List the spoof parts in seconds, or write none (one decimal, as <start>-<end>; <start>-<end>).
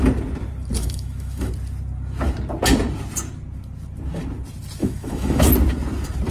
0.8-1.5; 4.8-5.5